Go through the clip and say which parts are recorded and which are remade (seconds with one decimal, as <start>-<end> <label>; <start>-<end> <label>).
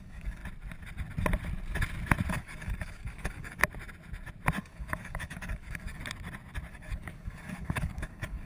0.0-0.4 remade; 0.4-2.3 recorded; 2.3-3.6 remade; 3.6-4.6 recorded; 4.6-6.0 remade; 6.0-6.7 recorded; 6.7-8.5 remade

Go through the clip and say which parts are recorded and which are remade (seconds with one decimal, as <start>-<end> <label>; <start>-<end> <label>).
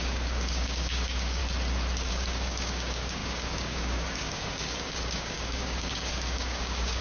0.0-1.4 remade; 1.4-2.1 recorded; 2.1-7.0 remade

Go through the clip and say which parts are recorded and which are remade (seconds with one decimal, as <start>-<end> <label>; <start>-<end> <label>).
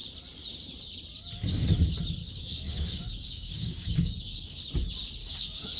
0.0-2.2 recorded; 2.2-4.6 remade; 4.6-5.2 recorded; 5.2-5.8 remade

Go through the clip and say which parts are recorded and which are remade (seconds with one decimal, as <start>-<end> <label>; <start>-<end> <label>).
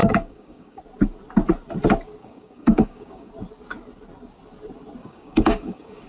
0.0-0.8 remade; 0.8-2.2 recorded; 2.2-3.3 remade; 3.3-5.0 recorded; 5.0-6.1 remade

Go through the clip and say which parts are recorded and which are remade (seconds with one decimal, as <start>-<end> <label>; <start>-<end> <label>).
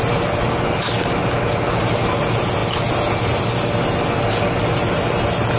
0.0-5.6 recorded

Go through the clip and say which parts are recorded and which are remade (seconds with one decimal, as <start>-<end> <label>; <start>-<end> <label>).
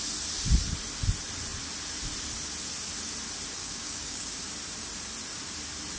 0.0-3.6 recorded; 3.6-4.4 remade; 4.4-6.0 recorded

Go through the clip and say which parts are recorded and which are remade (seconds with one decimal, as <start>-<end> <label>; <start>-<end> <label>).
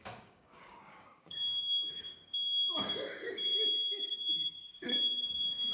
0.0-5.7 remade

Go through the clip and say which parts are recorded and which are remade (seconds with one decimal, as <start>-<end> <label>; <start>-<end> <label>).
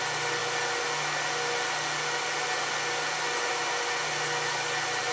0.0-5.1 recorded